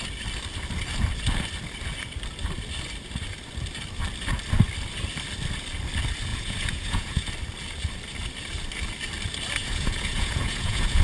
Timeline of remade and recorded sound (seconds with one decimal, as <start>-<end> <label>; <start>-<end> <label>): 0.0-6.3 recorded; 6.3-7.3 remade; 7.3-9.6 recorded; 9.6-11.0 remade

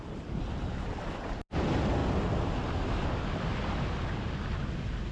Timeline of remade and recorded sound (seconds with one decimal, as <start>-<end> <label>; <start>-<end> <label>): 0.0-5.1 recorded

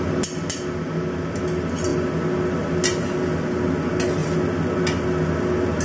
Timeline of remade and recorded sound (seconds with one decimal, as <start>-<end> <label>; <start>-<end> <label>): 0.0-5.8 recorded

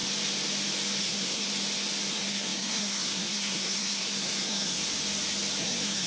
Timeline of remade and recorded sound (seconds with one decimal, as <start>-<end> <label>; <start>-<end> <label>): 0.0-1.0 recorded; 1.0-1.5 remade; 1.5-2.1 recorded; 2.1-4.8 remade; 4.8-5.6 recorded; 5.6-6.1 remade

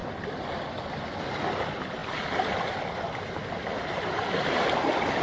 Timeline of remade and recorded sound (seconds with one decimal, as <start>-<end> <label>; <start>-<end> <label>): 0.0-5.2 recorded

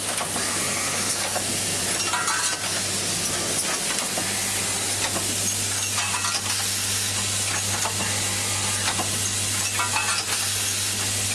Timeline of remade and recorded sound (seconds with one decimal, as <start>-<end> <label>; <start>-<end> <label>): 0.0-0.5 recorded; 0.5-1.5 remade; 1.5-11.3 recorded

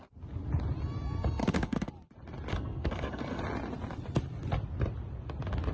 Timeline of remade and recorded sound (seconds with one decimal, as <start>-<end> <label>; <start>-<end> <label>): 0.0-1.4 recorded; 1.4-1.9 remade; 1.9-2.5 recorded; 2.5-3.4 remade; 3.4-5.7 recorded

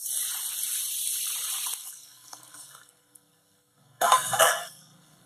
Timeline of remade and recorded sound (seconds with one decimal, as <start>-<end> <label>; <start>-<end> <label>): 0.0-1.8 recorded; 1.8-5.3 remade